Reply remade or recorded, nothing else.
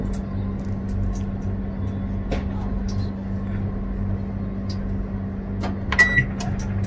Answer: recorded